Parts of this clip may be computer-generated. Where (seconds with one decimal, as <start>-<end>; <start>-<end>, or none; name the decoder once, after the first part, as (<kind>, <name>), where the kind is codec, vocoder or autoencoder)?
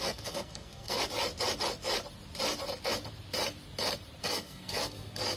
0.0-1.0 (codec, SNAC); 4.2-5.4